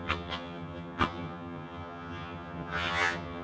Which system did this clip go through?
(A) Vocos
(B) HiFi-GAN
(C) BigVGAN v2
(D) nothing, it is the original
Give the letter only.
B